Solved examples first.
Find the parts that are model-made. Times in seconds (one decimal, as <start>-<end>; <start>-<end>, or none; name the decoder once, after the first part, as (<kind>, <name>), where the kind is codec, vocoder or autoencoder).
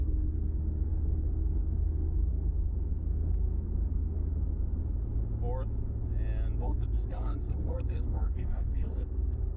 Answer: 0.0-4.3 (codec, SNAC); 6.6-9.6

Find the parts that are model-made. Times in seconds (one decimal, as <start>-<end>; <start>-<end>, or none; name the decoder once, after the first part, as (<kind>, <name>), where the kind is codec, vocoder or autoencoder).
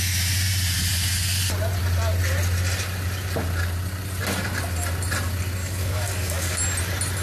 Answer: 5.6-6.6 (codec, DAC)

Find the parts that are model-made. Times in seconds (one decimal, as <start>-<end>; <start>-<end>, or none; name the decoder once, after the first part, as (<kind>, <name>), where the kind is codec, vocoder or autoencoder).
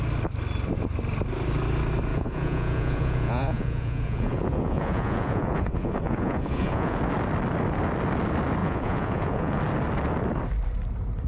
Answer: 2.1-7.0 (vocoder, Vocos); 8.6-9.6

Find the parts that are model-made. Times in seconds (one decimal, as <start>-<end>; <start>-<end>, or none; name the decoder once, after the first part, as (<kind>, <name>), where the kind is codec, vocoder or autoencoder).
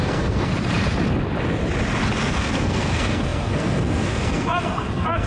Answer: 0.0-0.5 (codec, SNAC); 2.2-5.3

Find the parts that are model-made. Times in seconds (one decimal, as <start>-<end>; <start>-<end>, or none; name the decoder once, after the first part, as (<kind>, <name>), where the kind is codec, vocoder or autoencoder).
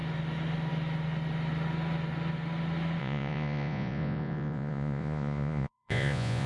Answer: 3.0-6.5 (vocoder, Vocos)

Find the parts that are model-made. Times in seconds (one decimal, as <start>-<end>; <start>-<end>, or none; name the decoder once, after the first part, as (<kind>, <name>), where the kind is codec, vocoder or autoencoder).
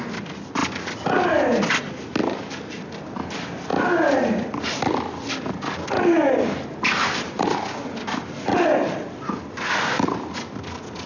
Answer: none